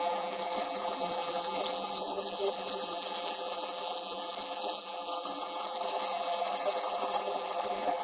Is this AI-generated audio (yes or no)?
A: yes